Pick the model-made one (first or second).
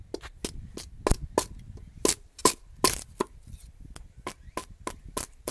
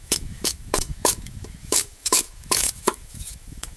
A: second